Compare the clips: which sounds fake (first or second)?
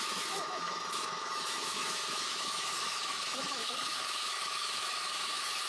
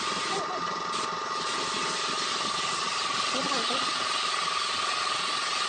first